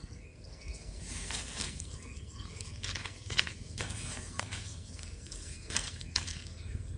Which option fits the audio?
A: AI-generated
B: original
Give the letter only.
A